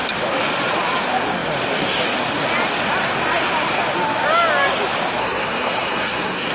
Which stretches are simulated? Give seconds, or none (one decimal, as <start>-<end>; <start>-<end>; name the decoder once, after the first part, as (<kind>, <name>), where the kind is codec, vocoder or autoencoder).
5.2-6.5 (codec, SNAC)